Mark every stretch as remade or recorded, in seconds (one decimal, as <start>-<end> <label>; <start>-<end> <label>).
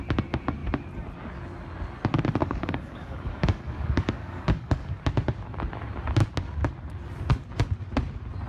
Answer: 0.0-2.4 recorded; 2.4-5.0 remade; 5.0-8.5 recorded